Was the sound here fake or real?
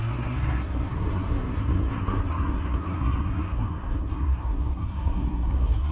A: fake